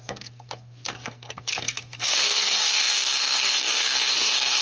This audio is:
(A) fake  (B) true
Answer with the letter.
A